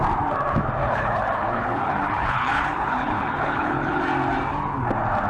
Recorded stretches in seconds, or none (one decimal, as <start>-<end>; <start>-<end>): 0.0-0.8; 4.0-5.3